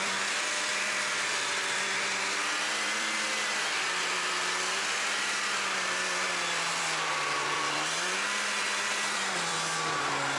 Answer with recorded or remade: remade